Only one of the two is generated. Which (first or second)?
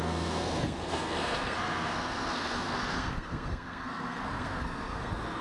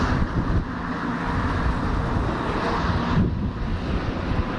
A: first